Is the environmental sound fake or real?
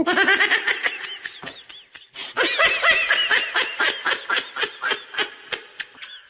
real